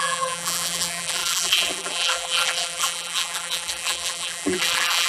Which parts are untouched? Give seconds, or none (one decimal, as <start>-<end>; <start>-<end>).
none